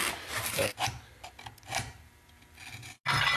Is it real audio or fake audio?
real